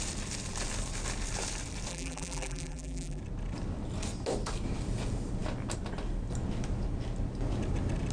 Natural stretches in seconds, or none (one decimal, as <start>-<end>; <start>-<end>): 0.0-1.9; 3.2-8.1